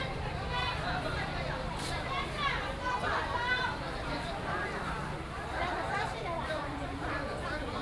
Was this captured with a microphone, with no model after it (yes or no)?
no